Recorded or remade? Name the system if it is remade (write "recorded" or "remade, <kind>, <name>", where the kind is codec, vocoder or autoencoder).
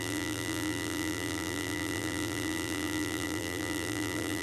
remade, vocoder, BigVGAN v2